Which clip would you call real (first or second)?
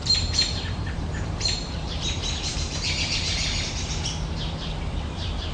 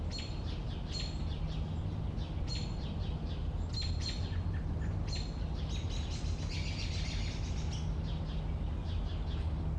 second